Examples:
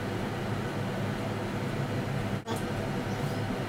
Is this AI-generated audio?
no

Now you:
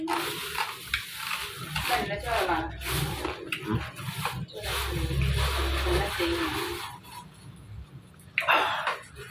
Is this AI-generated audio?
no